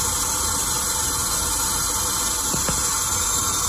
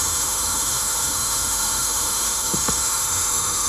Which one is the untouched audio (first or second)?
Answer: first